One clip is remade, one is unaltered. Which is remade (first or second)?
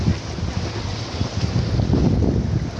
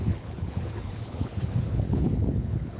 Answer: second